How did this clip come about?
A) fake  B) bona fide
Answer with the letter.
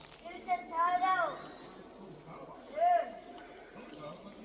B